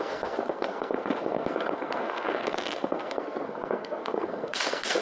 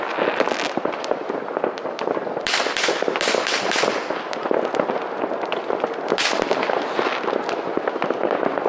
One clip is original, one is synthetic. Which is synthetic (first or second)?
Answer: first